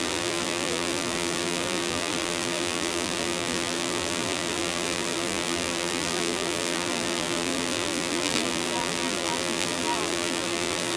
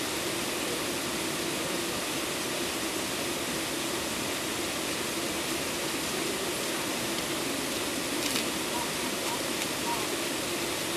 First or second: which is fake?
first